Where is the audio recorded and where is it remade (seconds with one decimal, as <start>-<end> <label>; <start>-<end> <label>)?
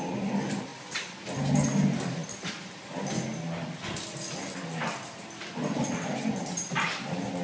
0.0-7.4 recorded